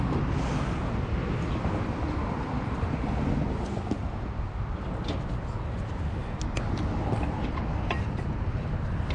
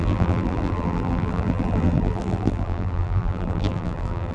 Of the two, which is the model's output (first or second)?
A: second